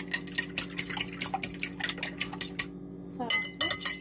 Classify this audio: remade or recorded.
recorded